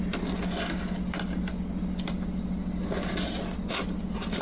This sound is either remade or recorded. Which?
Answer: recorded